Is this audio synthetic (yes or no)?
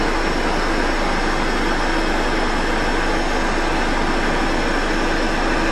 no